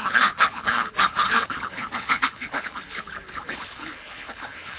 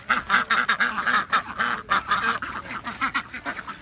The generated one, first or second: first